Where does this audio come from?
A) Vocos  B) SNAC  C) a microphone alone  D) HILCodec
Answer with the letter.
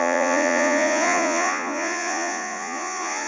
A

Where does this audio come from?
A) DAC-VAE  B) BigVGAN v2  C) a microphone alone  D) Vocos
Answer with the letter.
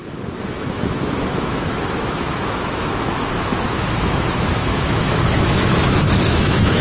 A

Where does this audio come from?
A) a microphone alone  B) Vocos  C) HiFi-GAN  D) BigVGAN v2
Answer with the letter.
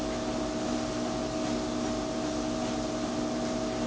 A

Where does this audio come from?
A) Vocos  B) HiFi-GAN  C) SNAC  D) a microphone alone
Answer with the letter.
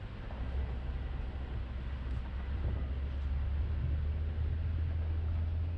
D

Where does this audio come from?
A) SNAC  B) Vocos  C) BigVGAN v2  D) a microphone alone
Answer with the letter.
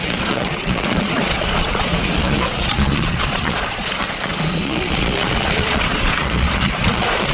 B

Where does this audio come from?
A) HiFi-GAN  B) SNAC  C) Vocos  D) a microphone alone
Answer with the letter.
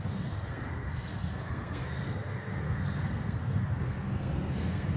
B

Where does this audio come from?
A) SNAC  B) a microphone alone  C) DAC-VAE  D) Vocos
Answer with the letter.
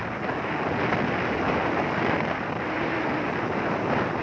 B